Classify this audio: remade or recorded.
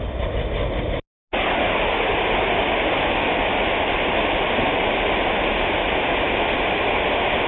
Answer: recorded